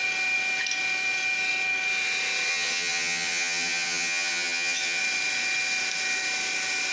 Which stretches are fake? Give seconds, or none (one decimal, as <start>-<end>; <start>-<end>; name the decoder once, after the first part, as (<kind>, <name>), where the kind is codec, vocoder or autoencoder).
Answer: 2.5-5.0 (vocoder, HiFi-GAN)